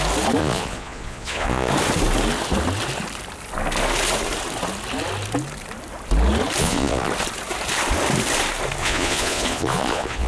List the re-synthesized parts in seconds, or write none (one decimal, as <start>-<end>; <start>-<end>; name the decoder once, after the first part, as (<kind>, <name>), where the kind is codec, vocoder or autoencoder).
0.4-1.7 (vocoder, Vocos); 6.6-7.1; 8.8-10.3